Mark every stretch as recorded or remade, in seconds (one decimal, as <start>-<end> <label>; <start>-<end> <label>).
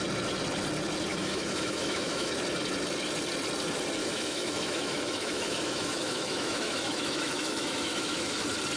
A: 0.0-1.1 recorded; 1.1-2.3 remade; 2.3-4.0 recorded; 4.0-8.4 remade; 8.4-8.8 recorded